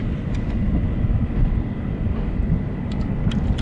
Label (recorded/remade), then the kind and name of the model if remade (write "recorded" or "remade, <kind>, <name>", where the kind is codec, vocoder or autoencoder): recorded